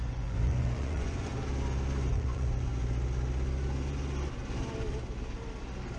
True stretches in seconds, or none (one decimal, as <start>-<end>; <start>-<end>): 1.3-2.1; 2.7-6.0